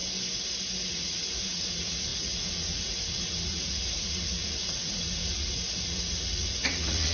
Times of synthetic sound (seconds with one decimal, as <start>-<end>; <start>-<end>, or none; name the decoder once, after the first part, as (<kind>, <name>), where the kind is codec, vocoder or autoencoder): 0.9-7.1 (vocoder, Vocos)